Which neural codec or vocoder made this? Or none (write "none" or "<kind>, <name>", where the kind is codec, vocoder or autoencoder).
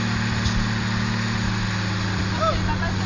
none